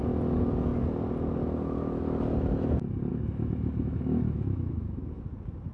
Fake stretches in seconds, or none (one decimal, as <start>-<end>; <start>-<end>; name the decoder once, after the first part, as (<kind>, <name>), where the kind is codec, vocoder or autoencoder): 3.1-5.2 (autoencoder, DAC-VAE)